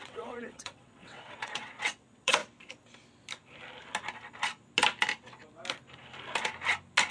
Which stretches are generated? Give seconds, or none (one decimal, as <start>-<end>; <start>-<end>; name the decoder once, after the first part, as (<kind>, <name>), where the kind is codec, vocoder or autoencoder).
0.0-2.4 (vocoder, WaveNeXt)